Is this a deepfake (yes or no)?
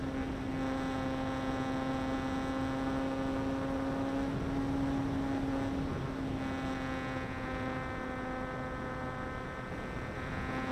no